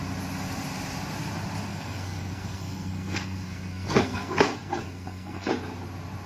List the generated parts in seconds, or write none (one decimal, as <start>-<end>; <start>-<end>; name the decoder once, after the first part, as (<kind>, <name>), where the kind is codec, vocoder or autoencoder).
1.7-5.5 (codec, SNAC)